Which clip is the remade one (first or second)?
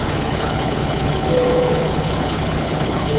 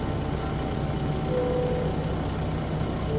first